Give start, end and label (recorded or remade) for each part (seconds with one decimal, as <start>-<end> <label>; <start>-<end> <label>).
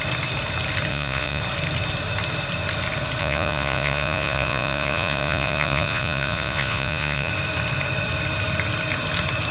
0.0-0.9 recorded; 0.9-1.4 remade; 1.4-3.2 recorded; 3.2-7.3 remade; 7.3-9.5 recorded